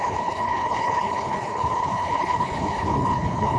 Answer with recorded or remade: remade